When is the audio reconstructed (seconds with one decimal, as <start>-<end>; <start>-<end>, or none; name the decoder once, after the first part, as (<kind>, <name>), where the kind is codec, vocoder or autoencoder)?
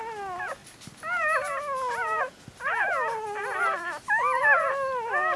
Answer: none